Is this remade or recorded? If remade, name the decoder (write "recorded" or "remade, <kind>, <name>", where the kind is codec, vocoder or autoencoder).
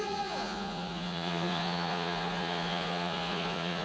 remade, vocoder, Vocos